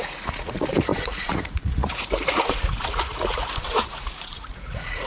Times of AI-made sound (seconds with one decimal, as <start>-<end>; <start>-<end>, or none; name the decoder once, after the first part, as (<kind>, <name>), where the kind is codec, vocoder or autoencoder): 0.0-5.1 (vocoder, Vocos)